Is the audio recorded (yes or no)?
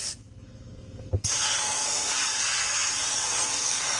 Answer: no